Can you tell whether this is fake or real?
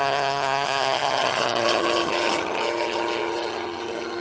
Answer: fake